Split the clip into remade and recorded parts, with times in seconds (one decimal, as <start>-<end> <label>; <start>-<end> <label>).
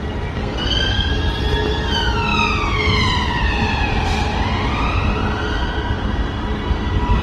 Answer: 0.0-0.4 recorded; 0.4-1.1 remade; 1.1-7.2 recorded